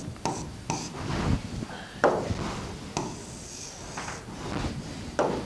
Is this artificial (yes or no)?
no